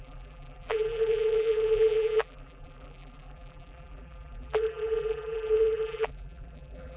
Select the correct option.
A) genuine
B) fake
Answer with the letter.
B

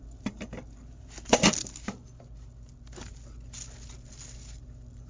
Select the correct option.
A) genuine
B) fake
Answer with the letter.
A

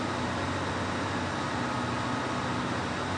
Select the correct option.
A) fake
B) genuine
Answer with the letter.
B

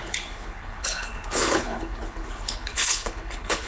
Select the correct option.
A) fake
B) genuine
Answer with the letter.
A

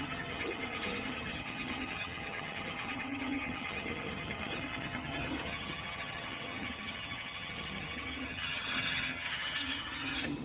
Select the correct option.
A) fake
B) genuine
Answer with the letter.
A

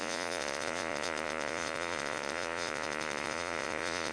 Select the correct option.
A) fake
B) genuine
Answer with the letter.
A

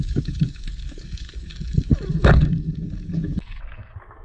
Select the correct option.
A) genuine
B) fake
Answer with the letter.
B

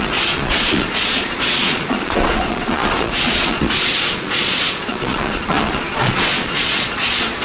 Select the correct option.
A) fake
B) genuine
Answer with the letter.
A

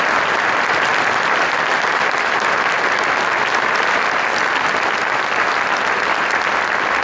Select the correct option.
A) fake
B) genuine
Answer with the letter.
B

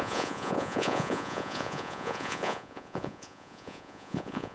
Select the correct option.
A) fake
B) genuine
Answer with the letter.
A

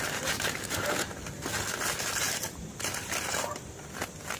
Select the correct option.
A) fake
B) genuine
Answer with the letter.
B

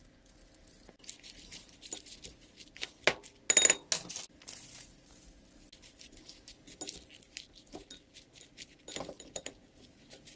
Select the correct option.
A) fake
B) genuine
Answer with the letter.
B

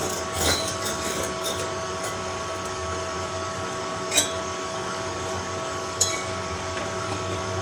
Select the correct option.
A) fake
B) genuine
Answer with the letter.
A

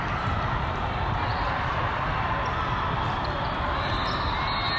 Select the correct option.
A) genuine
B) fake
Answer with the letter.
A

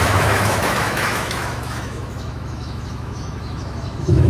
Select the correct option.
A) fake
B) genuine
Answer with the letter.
A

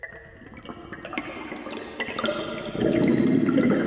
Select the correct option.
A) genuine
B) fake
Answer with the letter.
A